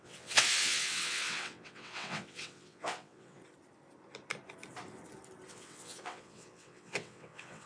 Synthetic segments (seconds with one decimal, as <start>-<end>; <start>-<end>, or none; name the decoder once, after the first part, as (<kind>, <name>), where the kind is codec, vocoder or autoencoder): 0.0-3.4 (vocoder, WaveNeXt); 5.5-7.7